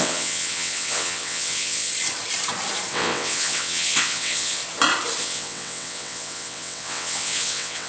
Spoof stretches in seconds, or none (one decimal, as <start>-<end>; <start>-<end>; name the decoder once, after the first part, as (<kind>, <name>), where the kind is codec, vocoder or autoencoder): 0.0-1.9 (vocoder, WaveNeXt); 2.9-4.6; 5.2-7.9